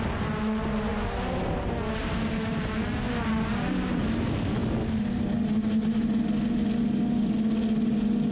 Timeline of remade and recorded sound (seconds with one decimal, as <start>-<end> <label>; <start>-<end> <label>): 0.0-8.3 recorded

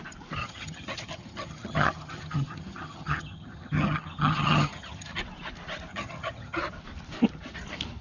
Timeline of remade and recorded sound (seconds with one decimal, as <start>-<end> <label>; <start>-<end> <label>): 0.0-0.4 recorded; 0.4-5.2 remade; 5.2-5.9 recorded; 5.9-6.6 remade; 6.6-8.0 recorded

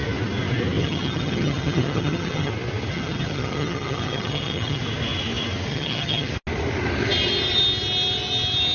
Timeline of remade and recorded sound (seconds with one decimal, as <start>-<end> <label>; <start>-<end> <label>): 0.0-0.8 recorded; 0.8-2.5 remade; 2.5-2.9 recorded; 2.9-4.8 remade; 4.8-5.7 recorded; 5.7-6.3 remade; 6.3-8.7 recorded

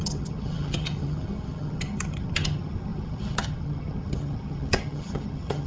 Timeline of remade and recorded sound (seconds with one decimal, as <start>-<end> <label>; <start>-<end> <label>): 0.0-5.7 remade